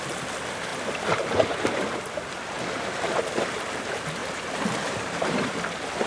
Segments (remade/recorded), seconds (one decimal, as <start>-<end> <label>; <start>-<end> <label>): 0.0-4.2 recorded; 4.2-5.5 remade; 5.5-6.1 recorded